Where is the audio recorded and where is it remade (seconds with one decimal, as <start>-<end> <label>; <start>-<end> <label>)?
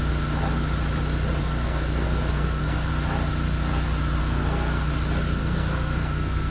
0.0-1.4 recorded; 1.4-2.9 remade; 2.9-4.2 recorded; 4.2-4.9 remade; 4.9-5.4 recorded; 5.4-6.5 remade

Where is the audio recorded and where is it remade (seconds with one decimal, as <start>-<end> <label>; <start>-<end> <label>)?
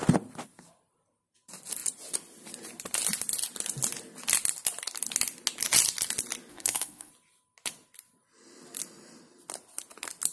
0.0-6.5 recorded; 6.5-7.1 remade; 7.1-10.3 recorded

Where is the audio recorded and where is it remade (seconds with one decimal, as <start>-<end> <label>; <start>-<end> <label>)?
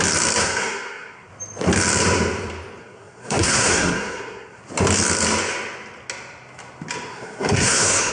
0.0-0.4 recorded; 0.4-1.3 remade; 1.3-2.8 recorded; 2.8-4.6 remade; 4.6-7.1 recorded; 7.1-8.1 remade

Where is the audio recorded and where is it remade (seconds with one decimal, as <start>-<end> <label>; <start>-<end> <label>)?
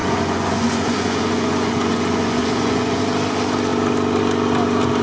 0.0-3.0 remade; 3.0-5.0 recorded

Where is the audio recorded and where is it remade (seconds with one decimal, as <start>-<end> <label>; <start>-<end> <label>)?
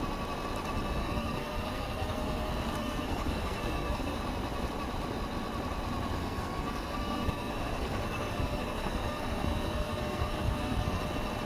0.0-1.0 recorded; 1.0-4.2 remade; 4.2-6.2 recorded; 6.2-11.0 remade; 11.0-11.5 recorded